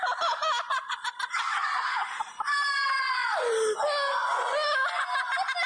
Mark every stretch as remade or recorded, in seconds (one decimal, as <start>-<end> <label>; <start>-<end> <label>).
0.0-5.7 recorded